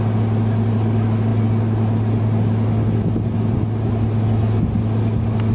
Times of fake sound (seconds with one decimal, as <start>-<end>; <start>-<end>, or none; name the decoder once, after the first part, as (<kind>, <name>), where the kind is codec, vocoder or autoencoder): none

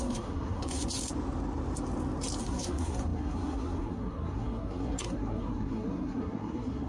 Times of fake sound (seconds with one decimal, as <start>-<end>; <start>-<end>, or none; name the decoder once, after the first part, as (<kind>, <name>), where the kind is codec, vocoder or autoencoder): 0.0-1.0 (codec, SNAC); 2.4-6.9

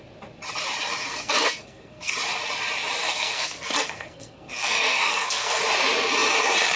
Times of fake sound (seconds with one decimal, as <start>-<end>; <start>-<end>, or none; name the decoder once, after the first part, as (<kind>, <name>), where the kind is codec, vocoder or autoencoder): 1.0-2.1 (codec, SNAC); 3.0-5.6

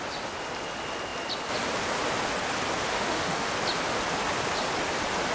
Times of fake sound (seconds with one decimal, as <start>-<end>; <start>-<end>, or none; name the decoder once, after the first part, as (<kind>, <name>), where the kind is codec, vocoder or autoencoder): 2.9-3.5 (autoencoder, DAC-VAE)

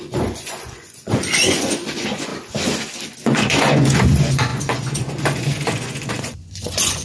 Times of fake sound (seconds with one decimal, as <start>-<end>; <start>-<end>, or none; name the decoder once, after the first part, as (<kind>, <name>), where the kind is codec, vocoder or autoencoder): 0.0-2.3 (vocoder, Vocos); 3.2-7.0

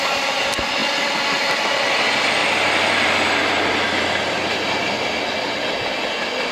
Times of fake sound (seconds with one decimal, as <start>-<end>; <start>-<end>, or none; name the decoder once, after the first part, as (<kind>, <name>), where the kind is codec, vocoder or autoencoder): 0.8-1.6 (vocoder, BigVGAN v2); 2.4-3.5